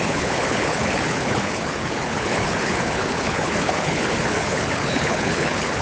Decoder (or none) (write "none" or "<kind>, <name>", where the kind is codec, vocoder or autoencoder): codec, HILCodec